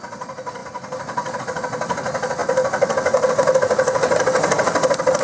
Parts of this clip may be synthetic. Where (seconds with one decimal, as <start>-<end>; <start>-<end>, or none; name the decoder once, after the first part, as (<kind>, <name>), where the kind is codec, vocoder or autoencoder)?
none